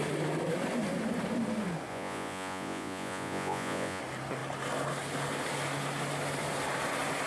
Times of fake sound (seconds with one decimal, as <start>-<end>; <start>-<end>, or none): 1.9-4.0